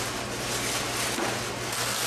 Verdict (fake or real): real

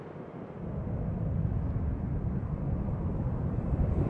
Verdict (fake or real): real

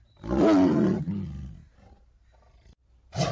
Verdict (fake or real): real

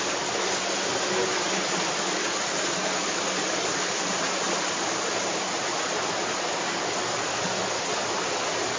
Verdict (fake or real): real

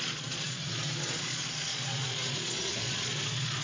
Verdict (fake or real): fake